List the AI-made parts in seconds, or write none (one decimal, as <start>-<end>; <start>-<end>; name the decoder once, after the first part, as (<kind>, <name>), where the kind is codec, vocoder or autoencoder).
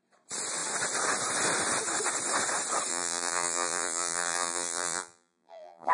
2.9-5.9 (vocoder, BigVGAN v2)